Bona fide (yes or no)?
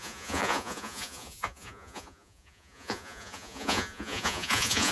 no